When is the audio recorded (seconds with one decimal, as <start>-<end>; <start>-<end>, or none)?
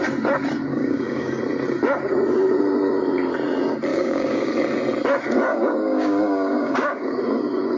0.0-0.7; 1.4-3.9; 4.5-5.5; 7.1-7.8